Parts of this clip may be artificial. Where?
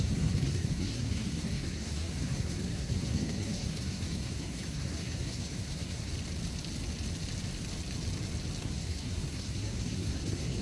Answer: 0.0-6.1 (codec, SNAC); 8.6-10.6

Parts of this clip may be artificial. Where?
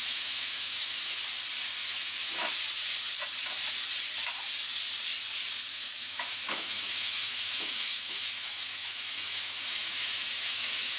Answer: 0.0-1.2 (autoencoder, DAC-VAE); 1.8-2.5; 5.7-11.0